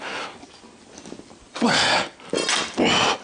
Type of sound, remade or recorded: recorded